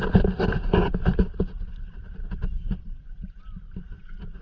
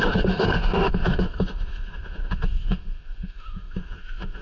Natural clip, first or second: first